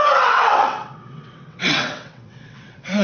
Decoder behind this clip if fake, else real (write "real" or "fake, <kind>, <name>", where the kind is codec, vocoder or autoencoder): fake, vocoder, WaveNeXt